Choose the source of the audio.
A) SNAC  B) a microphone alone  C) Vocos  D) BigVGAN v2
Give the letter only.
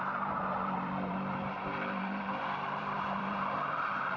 D